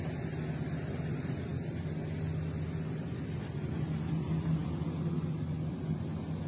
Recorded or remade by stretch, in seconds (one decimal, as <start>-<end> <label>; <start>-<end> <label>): 0.0-6.5 recorded